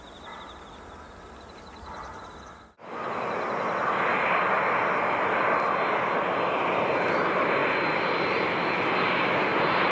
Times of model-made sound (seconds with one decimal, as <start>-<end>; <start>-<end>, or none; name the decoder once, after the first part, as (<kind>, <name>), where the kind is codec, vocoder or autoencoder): none